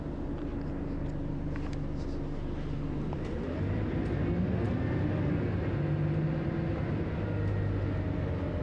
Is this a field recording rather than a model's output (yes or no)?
yes